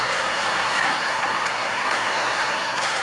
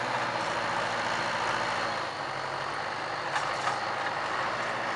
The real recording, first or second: second